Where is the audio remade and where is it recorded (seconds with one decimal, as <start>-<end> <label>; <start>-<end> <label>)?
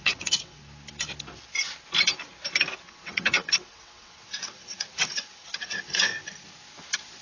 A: 0.0-0.6 remade; 0.6-2.9 recorded; 2.9-6.1 remade; 6.1-7.2 recorded